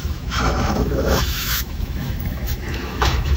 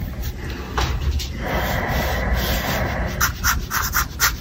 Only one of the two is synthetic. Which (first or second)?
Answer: first